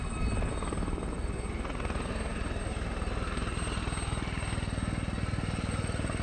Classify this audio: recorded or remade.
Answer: recorded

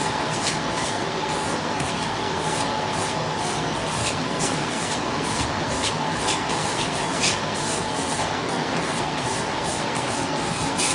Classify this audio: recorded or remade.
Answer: remade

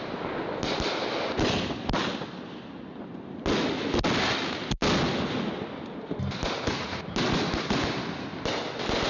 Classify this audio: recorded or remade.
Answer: recorded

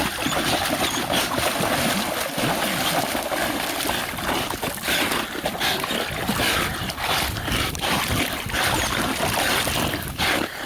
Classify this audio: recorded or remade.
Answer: recorded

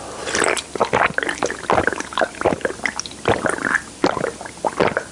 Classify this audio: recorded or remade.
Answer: recorded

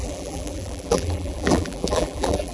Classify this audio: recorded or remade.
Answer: remade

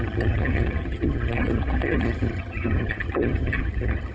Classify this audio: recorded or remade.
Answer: remade